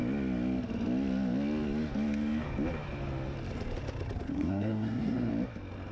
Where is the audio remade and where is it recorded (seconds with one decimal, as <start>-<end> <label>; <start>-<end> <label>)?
0.0-4.3 recorded; 4.3-5.3 remade; 5.3-5.9 recorded